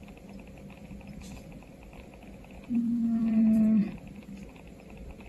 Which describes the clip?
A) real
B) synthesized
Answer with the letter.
B